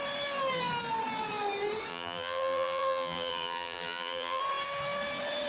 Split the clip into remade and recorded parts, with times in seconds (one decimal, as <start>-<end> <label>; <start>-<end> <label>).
0.0-1.9 recorded; 1.9-4.4 remade; 4.4-5.5 recorded